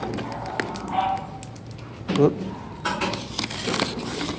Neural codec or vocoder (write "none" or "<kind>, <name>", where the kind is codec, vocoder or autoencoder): none